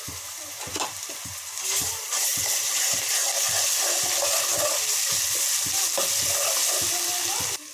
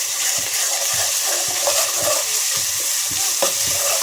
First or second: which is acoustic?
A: first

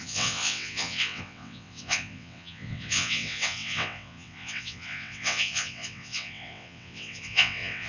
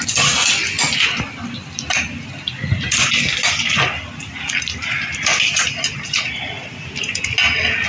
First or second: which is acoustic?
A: second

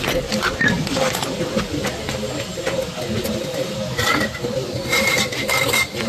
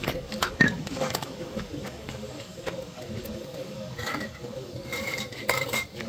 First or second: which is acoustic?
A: first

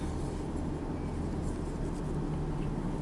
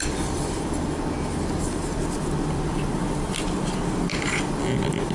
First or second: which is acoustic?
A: first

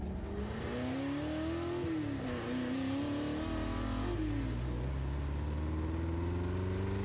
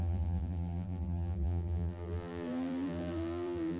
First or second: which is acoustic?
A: first